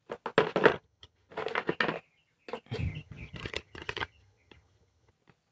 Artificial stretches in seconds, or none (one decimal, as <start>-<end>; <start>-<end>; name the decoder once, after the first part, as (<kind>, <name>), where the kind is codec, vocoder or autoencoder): 0.7-1.3 (vocoder, HiFi-GAN); 2.9-5.1